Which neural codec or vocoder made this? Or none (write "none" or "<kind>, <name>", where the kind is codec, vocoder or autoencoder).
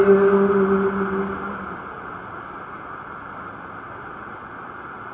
none